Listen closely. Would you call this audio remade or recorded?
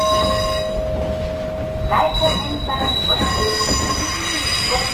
recorded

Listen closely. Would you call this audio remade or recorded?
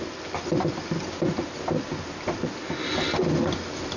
recorded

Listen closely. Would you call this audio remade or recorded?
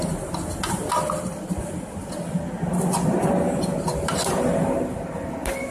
recorded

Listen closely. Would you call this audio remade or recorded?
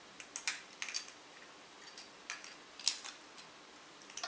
recorded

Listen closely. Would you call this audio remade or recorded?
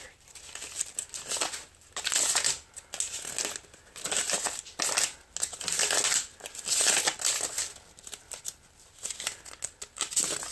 recorded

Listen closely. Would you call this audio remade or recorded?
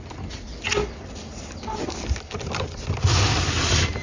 recorded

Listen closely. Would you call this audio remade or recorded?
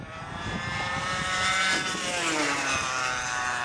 remade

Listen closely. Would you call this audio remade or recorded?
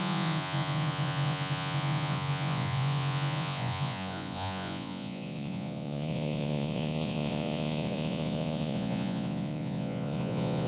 remade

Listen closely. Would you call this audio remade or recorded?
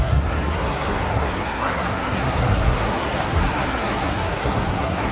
remade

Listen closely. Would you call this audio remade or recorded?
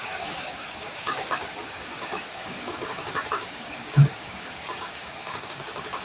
remade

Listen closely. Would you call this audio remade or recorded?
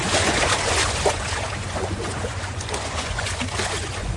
remade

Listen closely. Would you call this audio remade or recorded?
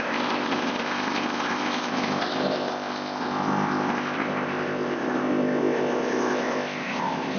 remade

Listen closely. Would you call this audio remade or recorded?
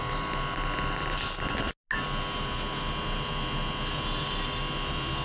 recorded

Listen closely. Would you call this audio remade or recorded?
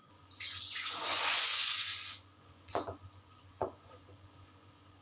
remade